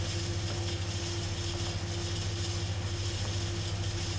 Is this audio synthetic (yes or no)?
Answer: no